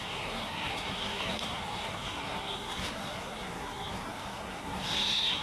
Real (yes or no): no